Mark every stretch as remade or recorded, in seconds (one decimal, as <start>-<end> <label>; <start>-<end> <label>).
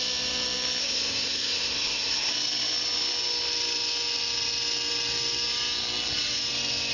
0.0-0.8 recorded; 0.8-2.3 remade; 2.3-6.9 recorded